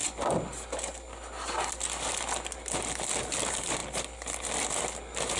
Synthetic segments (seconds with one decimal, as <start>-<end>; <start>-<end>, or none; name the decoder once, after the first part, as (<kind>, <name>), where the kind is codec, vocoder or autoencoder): none